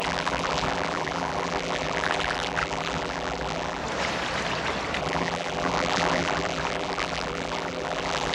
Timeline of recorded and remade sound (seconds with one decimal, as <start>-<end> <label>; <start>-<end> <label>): 0.0-3.8 remade; 3.8-5.0 recorded; 5.0-8.3 remade